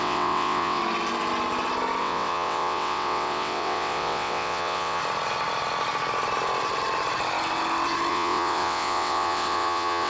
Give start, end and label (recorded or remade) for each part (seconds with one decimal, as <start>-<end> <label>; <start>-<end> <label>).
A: 0.0-0.8 remade; 0.8-2.0 recorded; 2.0-5.0 remade; 5.0-8.1 recorded; 8.1-10.1 remade